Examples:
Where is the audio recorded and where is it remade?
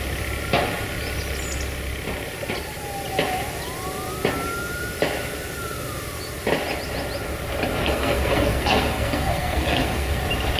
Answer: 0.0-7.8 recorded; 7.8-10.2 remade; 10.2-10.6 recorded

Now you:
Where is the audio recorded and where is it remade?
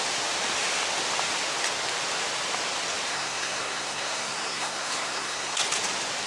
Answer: 0.0-3.1 recorded; 3.1-5.6 remade; 5.6-6.3 recorded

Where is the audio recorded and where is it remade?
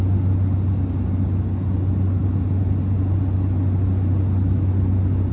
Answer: 0.0-5.3 recorded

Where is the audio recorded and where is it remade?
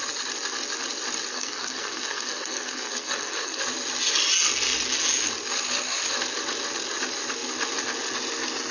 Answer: 0.0-1.3 recorded; 1.3-3.6 remade; 3.6-8.7 recorded